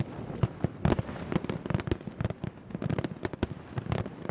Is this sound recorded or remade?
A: recorded